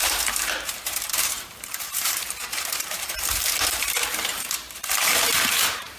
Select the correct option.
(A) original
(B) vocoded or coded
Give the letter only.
B